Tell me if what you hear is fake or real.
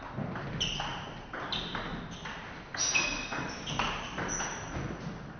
real